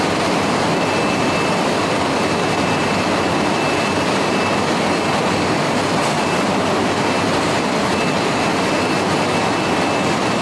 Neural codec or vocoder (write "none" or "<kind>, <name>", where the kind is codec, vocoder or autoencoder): none